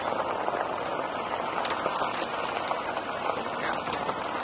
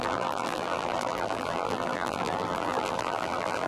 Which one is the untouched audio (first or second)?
first